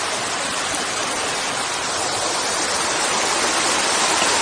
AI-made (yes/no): no